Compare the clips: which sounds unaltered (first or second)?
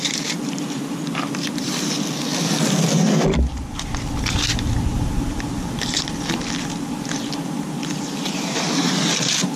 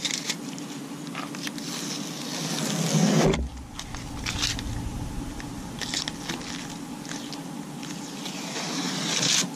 second